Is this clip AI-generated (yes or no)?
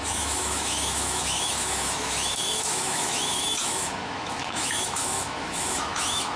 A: yes